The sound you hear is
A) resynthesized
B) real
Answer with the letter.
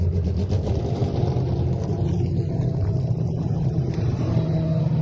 B